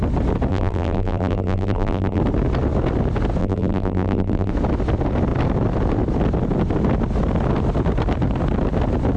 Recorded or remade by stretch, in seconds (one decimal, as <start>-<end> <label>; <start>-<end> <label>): 0.0-0.5 recorded; 0.5-2.2 remade; 2.2-3.4 recorded; 3.4-4.5 remade; 4.5-9.2 recorded